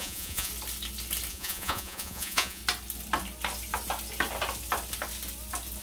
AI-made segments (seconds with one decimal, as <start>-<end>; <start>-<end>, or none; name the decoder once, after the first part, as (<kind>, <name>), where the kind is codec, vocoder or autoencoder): 0.0-0.5 (vocoder, Vocos); 1.3-2.6